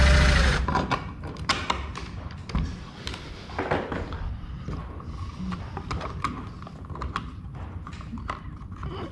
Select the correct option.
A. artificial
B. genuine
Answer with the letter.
B